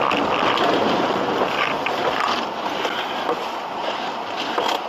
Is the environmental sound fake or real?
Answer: real